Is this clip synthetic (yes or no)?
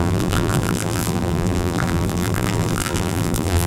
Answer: yes